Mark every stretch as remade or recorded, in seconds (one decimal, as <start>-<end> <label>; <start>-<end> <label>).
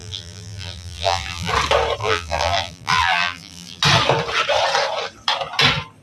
0.0-1.5 remade; 1.5-2.0 recorded; 2.0-3.8 remade; 3.8-6.0 recorded